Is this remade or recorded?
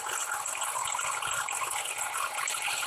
recorded